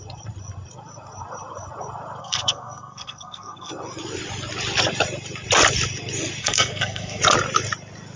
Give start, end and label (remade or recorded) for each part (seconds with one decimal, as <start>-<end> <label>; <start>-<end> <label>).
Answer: 0.0-2.2 recorded; 2.2-3.7 remade; 3.7-6.4 recorded; 6.4-7.2 remade; 7.2-8.2 recorded